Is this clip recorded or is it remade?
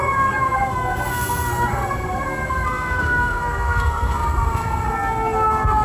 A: remade